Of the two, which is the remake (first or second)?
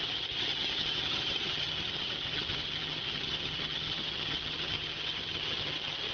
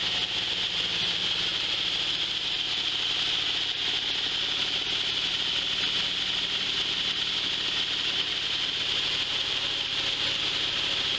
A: first